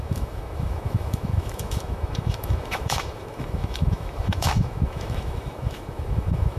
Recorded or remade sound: remade